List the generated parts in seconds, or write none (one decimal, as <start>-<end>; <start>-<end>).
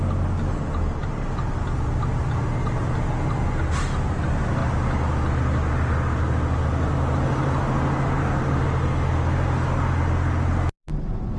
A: none